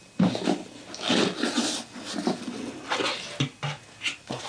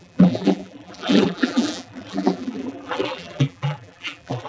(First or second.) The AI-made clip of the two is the second